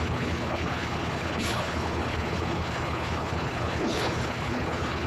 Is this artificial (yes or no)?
yes